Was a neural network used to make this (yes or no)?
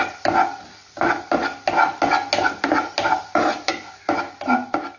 no